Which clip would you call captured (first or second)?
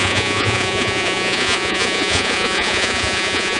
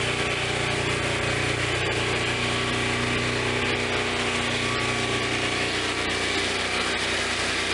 second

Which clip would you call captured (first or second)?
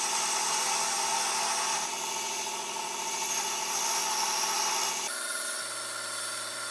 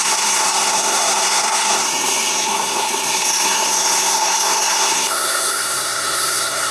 first